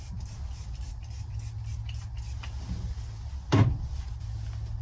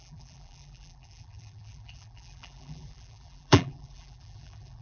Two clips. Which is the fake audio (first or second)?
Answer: second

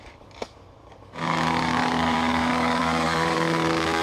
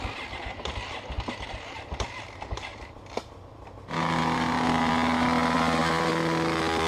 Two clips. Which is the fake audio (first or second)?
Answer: first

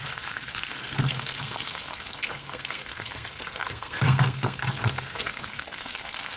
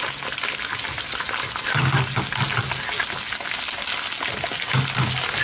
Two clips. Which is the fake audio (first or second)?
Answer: first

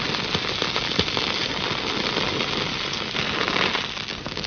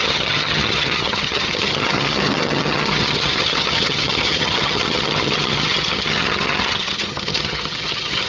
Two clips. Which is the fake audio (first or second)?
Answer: second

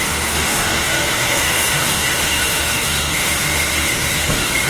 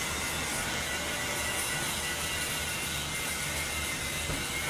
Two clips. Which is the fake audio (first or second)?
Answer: first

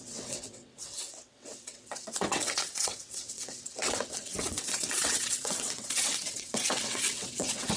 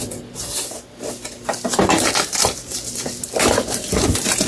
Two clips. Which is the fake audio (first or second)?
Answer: first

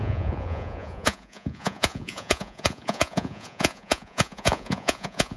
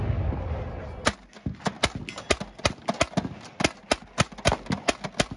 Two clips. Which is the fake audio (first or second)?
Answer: first